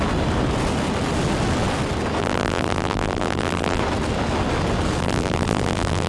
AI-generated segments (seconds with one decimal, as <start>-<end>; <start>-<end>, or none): 2.2-3.8; 5.0-6.1

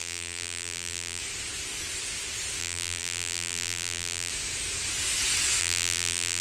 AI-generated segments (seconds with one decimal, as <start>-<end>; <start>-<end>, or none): 0.0-1.2; 2.6-4.3; 5.6-6.4

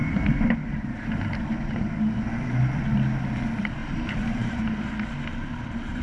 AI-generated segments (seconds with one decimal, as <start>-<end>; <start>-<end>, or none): 3.8-4.7; 5.3-6.0

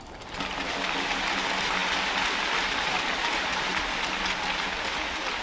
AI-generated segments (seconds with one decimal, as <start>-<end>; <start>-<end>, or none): none

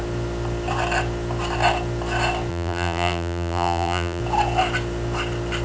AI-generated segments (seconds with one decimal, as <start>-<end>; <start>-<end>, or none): 2.5-4.2

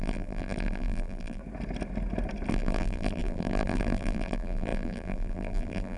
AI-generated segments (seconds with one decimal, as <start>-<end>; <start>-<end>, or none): 0.0-1.4; 2.5-6.0